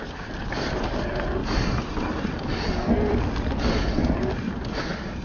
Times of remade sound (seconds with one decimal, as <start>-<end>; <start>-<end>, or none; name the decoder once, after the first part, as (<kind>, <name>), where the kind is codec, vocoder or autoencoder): none